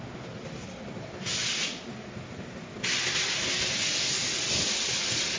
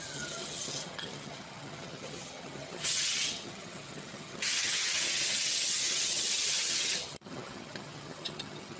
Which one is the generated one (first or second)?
second